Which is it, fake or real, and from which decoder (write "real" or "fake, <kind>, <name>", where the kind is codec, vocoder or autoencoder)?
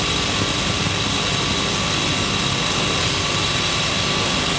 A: real